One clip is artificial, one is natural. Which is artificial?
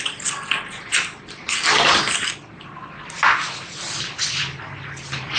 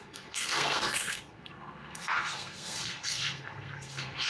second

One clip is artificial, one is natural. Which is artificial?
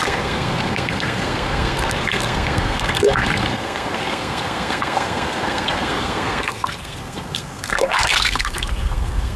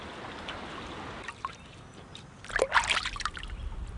first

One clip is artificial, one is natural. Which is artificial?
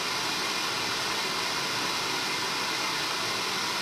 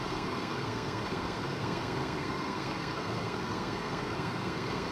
second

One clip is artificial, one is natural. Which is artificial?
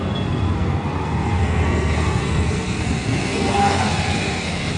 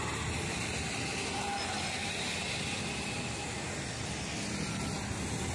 first